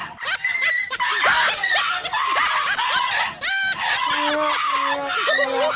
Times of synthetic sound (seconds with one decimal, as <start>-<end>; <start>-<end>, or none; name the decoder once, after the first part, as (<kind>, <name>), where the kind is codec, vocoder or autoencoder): none